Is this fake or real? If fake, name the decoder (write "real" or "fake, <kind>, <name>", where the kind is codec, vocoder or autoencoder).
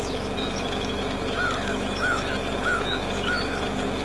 fake, autoencoder, DAC-VAE